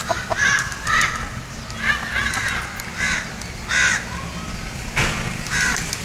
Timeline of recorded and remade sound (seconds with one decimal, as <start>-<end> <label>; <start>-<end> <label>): 0.0-6.0 recorded